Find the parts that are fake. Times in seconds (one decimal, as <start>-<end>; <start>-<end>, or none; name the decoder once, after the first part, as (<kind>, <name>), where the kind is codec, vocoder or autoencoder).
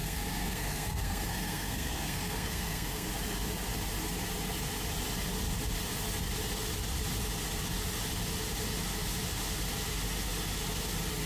0.0-3.1 (codec, SNAC)